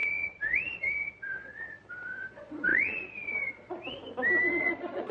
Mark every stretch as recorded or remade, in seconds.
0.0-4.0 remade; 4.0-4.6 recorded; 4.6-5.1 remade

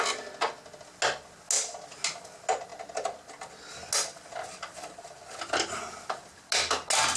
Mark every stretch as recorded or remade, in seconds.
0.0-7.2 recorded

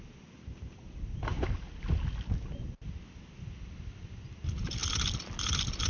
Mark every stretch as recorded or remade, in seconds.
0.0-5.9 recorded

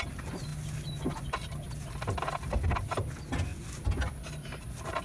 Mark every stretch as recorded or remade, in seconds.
0.0-5.0 recorded

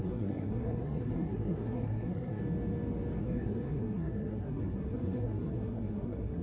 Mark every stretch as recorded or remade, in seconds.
0.0-2.4 remade; 2.4-3.2 recorded; 3.2-6.4 remade

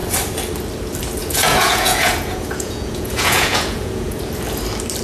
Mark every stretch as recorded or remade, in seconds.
0.0-1.2 recorded; 1.2-4.2 remade; 4.2-5.0 recorded

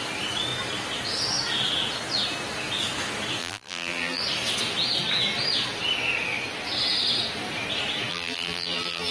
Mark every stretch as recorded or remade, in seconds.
0.0-3.4 recorded; 3.4-4.2 remade; 4.2-8.1 recorded; 8.1-9.1 remade

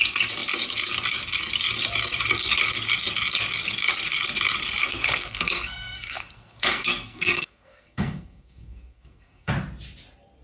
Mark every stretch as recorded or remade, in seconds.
0.0-4.8 recorded; 4.8-9.5 remade; 9.5-10.4 recorded